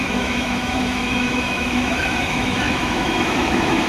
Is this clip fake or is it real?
fake